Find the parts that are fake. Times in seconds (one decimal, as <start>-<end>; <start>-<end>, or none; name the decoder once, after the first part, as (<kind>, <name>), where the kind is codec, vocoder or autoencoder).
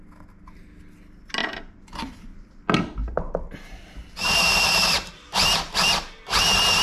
1.4-2.6 (vocoder, BigVGAN v2); 3.0-5.4